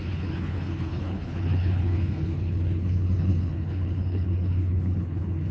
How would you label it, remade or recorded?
remade